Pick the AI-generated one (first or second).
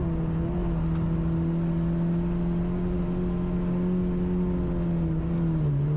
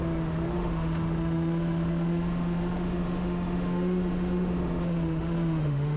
second